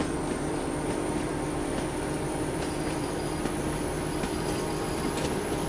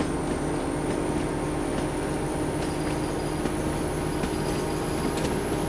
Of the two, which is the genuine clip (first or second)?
second